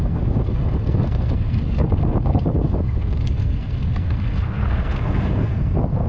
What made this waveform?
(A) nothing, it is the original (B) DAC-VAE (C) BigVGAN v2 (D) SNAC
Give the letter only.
D